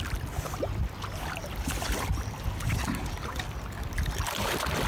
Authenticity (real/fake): real